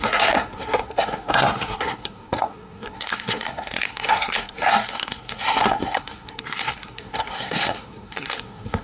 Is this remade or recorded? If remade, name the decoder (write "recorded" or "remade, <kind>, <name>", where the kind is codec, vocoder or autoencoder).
remade, codec, SNAC